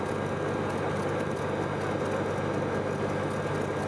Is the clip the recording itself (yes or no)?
yes